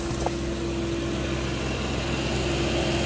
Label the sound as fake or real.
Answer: real